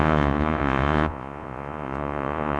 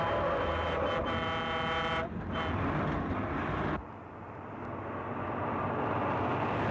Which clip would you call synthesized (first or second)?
first